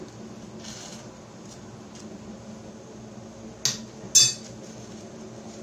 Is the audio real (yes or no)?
yes